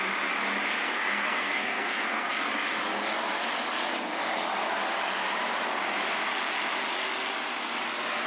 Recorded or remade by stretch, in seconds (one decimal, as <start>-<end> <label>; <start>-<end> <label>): 0.0-0.8 recorded; 0.8-2.3 remade; 2.3-8.3 recorded